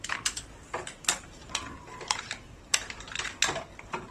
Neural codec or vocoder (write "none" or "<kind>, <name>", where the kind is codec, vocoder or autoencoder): vocoder, BigVGAN v2